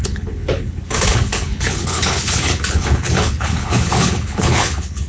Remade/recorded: remade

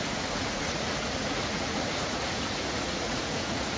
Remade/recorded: remade